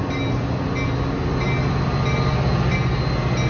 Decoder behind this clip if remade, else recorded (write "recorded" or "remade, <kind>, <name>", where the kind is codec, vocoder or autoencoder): recorded